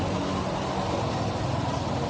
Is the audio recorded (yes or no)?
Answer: yes